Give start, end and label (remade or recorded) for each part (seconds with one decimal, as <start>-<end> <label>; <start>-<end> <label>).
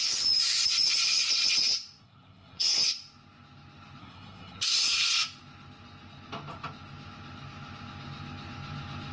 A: 0.0-2.0 recorded; 2.0-2.8 remade; 2.8-4.0 recorded; 4.0-5.1 remade; 5.1-9.1 recorded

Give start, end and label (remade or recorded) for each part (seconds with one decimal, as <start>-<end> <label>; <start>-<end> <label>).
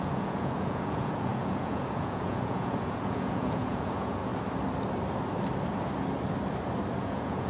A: 0.0-4.3 remade; 4.3-7.0 recorded; 7.0-7.5 remade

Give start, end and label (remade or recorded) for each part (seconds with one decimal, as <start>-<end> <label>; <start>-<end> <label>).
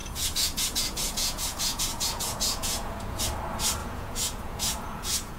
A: 0.0-3.2 remade; 3.2-3.8 recorded; 3.8-5.4 remade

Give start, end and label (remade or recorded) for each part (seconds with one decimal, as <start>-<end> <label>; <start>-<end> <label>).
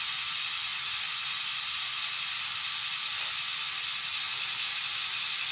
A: 0.0-5.5 recorded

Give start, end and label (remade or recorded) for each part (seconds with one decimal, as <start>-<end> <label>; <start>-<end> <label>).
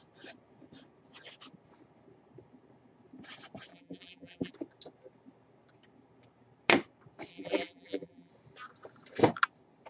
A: 0.0-3.7 recorded; 3.7-4.5 remade; 4.5-7.3 recorded; 7.3-8.3 remade; 8.3-9.9 recorded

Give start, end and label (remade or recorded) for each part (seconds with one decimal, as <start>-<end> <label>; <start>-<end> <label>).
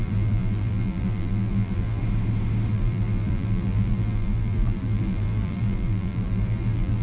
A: 0.0-2.0 remade; 2.0-2.7 recorded; 2.7-7.0 remade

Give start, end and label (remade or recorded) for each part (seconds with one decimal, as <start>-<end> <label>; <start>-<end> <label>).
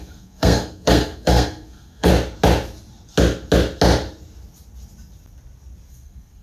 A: 0.0-2.1 remade; 2.1-5.9 recorded; 5.9-6.4 remade